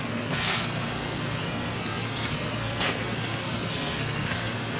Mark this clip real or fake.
fake